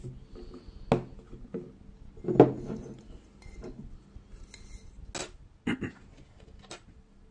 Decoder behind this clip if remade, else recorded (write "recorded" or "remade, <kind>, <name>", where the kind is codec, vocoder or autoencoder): recorded